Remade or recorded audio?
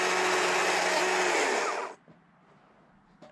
recorded